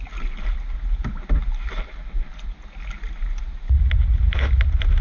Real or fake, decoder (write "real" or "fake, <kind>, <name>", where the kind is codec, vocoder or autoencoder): real